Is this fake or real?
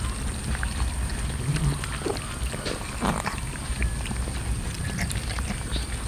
real